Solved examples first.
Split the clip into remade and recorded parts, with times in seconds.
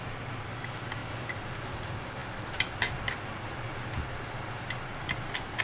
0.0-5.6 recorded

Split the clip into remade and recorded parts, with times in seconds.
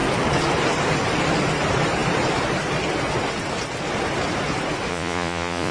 0.0-4.9 recorded; 4.9-5.7 remade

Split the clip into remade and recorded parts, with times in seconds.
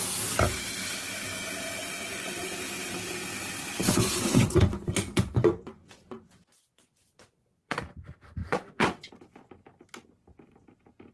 0.0-1.8 recorded; 1.8-2.5 remade; 2.5-3.8 recorded; 3.8-7.8 remade; 7.8-8.4 recorded; 8.4-9.1 remade; 9.1-11.1 recorded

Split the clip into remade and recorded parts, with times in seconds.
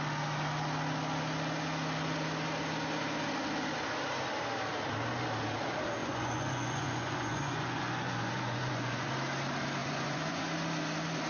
0.0-6.0 recorded; 6.0-9.1 remade; 9.1-9.8 recorded; 9.8-10.4 remade; 10.4-11.3 recorded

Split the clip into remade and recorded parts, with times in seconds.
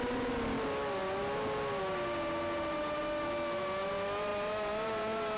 0.0-5.4 recorded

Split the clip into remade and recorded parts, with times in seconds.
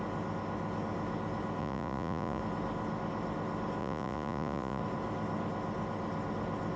0.0-1.6 recorded; 1.6-2.4 remade; 2.4-3.8 recorded; 3.8-4.8 remade; 4.8-6.8 recorded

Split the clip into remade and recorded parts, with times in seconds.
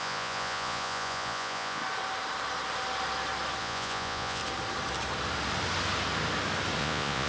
0.0-1.8 remade; 1.8-3.6 recorded; 3.6-4.4 remade; 4.4-6.8 recorded; 6.8-7.3 remade